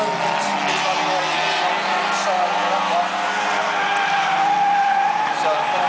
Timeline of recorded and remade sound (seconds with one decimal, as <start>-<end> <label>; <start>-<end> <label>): 0.0-5.9 recorded